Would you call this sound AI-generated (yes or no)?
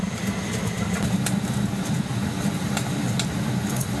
no